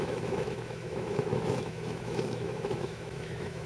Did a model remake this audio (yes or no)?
yes